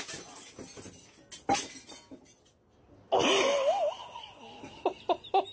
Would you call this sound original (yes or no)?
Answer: yes